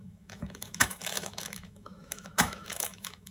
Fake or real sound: fake